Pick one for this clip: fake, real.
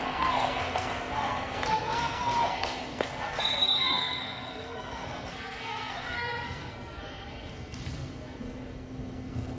fake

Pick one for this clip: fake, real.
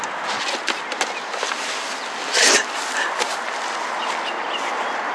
real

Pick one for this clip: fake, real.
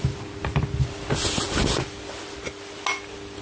real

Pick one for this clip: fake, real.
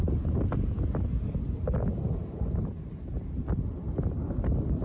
real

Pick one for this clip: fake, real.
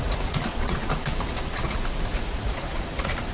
fake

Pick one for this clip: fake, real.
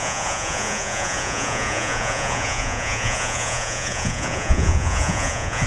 fake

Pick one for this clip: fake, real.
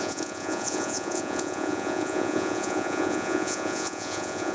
fake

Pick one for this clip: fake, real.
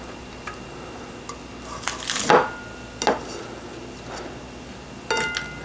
real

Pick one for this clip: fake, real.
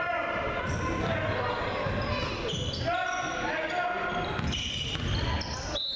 real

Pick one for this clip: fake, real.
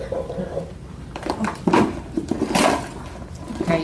real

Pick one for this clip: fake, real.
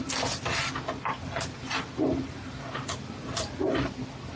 real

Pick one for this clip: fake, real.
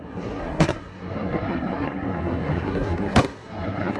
fake